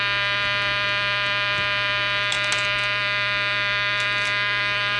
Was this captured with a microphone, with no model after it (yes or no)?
yes